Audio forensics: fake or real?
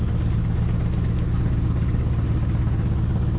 real